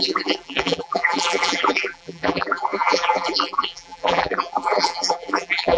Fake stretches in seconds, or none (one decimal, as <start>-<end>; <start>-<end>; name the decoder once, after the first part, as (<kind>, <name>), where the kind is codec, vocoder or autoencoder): 0.0-5.8 (vocoder, BigVGAN v2)